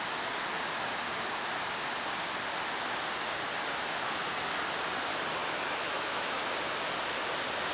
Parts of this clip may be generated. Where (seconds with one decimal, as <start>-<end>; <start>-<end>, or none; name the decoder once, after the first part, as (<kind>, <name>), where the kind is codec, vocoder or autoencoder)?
5.4-6.4 (autoencoder, DAC-VAE)